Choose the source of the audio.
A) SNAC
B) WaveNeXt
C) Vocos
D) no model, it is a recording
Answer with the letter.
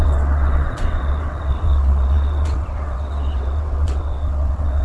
B